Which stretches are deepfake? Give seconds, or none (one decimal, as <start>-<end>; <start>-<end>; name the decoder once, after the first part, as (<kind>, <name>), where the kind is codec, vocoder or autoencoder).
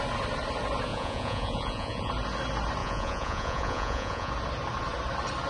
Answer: 0.9-2.1 (vocoder, Vocos); 2.8-4.3